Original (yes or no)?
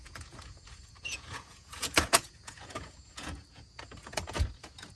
no